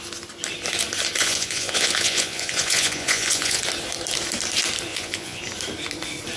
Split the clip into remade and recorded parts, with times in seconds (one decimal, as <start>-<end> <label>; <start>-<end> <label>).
0.0-1.2 recorded; 1.2-3.6 remade; 3.6-4.9 recorded; 4.9-5.4 remade; 5.4-6.4 recorded